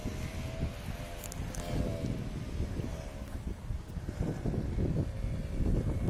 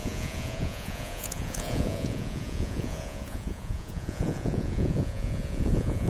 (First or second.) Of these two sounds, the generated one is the second